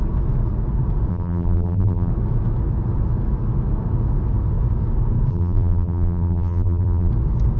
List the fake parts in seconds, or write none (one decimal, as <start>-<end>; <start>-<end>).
1.1-2.1; 5.3-7.1